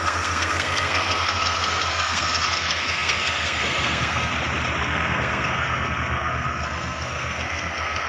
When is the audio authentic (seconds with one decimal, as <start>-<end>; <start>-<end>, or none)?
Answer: 4.3-4.8